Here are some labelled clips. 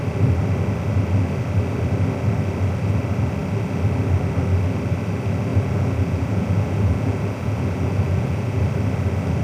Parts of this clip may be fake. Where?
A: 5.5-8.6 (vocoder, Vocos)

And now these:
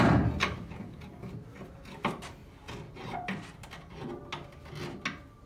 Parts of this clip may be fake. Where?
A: 0.4-1.3 (codec, DAC)

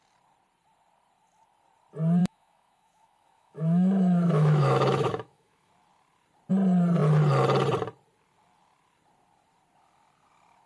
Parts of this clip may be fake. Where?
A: 2.2-5.7 (autoencoder, DAC-VAE)

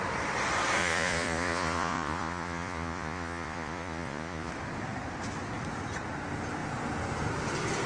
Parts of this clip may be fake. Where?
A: 0.8-4.5 (vocoder, Vocos)